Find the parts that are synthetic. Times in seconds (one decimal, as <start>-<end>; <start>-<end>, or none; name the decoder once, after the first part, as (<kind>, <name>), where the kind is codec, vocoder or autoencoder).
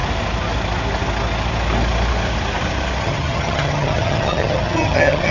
3.0-5.3 (vocoder, HiFi-GAN)